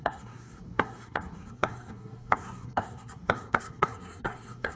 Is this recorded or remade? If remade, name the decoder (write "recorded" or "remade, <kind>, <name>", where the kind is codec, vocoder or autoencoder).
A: remade, codec, SNAC